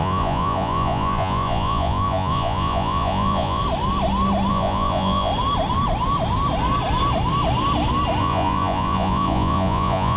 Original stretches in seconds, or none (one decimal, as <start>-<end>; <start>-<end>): 3.6-4.5; 5.3-8.2